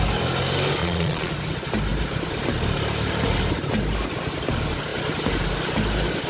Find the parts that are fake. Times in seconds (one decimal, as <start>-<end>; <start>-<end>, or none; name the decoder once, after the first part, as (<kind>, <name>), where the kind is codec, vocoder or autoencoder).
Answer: 0.8-1.3 (vocoder, Vocos)